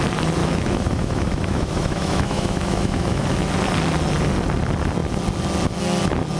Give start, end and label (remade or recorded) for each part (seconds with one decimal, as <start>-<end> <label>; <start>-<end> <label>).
0.0-0.4 recorded; 0.4-3.5 remade; 3.5-6.4 recorded